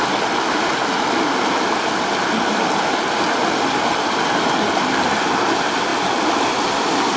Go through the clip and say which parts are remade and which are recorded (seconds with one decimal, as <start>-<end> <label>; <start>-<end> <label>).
0.0-7.2 recorded